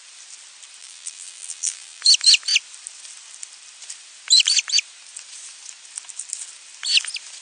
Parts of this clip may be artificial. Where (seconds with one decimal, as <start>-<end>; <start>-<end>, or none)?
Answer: 0.8-2.0